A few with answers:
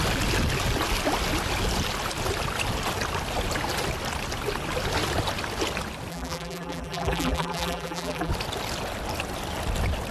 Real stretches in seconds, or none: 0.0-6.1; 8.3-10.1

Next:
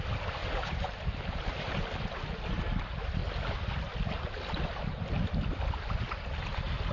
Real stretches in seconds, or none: 0.0-0.4; 1.8-6.9

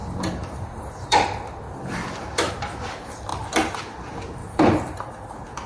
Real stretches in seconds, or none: 2.5-3.3; 3.8-4.4

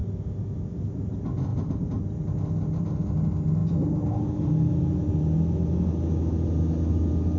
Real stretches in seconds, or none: 0.0-1.5; 2.0-7.4

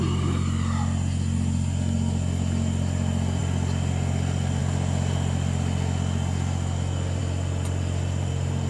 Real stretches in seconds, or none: 0.0-7.2

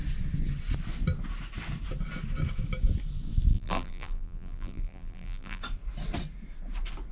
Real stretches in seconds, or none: 0.0-3.5; 5.6-7.1